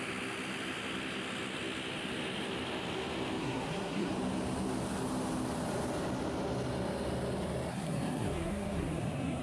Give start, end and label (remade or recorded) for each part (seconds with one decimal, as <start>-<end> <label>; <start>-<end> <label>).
0.0-3.4 recorded; 3.4-4.1 remade; 4.1-7.7 recorded; 7.7-9.4 remade